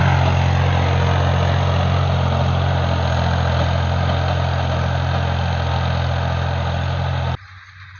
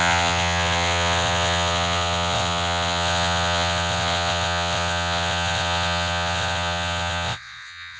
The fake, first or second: second